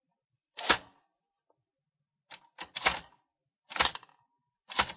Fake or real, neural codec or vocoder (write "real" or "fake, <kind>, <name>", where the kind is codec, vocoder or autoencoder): fake, vocoder, BigVGAN v2